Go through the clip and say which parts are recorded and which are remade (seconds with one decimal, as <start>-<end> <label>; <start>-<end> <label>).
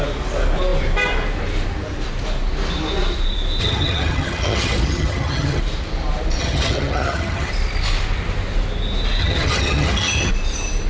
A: 0.0-3.6 recorded; 3.6-5.6 remade; 5.6-6.4 recorded; 6.4-7.5 remade; 7.5-9.2 recorded; 9.2-10.3 remade; 10.3-10.9 recorded